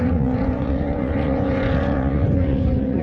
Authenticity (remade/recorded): remade